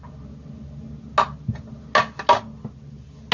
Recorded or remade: recorded